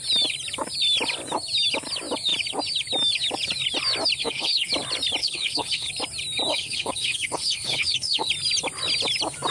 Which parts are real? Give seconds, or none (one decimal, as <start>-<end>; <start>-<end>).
0.0-4.2; 4.7-5.2; 5.9-6.5; 8.3-9.5